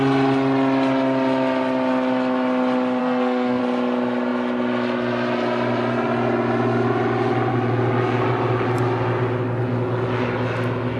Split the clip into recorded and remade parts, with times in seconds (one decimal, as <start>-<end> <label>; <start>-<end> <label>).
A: 0.0-3.0 recorded; 3.0-3.6 remade; 3.6-11.0 recorded